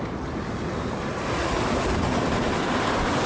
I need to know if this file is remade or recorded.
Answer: recorded